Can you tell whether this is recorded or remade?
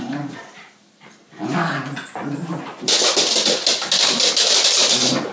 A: recorded